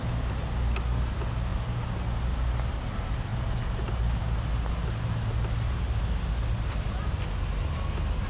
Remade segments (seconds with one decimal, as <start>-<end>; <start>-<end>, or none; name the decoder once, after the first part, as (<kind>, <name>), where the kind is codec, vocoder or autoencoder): none